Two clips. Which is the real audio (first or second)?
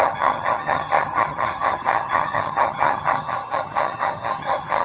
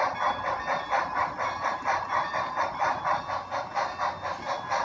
second